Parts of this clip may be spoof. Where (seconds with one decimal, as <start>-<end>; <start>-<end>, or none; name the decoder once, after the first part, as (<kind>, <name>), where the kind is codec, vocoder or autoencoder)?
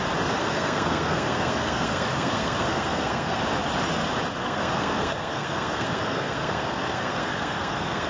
0.4-3.4 (codec, SNAC); 4.4-8.1